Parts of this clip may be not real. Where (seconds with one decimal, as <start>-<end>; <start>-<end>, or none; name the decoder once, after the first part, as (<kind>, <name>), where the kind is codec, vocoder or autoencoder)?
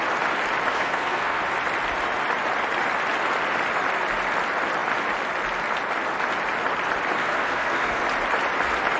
0.7-1.4 (codec, SNAC); 7.2-8.0